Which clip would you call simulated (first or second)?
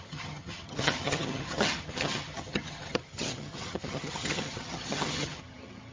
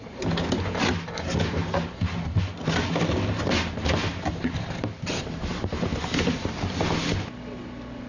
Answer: first